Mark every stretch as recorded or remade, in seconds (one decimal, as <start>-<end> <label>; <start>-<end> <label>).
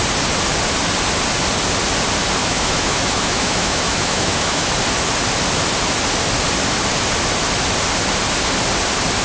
0.0-2.4 recorded; 2.4-4.7 remade; 4.7-9.2 recorded